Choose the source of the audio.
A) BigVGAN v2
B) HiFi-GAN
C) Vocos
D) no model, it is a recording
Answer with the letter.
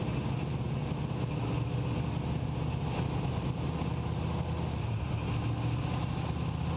D